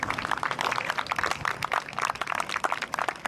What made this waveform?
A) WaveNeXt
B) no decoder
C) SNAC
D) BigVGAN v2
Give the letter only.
D